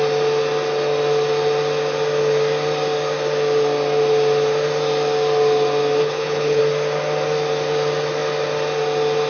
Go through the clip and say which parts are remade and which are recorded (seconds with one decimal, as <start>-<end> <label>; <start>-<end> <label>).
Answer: 0.0-6.0 recorded; 6.0-6.6 remade; 6.6-9.3 recorded